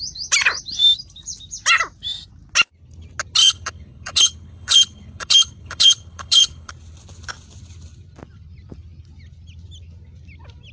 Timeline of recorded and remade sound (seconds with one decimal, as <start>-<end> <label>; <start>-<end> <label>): 0.0-3.4 recorded; 3.4-6.7 remade; 6.7-10.7 recorded